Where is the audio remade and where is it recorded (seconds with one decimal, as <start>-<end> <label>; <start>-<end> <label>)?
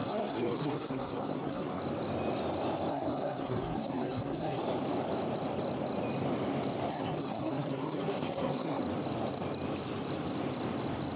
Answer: 0.0-1.8 remade; 1.8-2.9 recorded; 2.9-4.6 remade; 4.6-6.9 recorded; 6.9-8.8 remade; 8.8-11.2 recorded